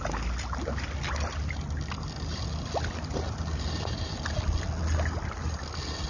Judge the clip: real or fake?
real